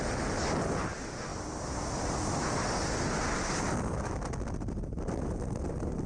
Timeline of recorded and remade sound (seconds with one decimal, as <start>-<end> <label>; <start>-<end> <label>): 0.0-6.1 recorded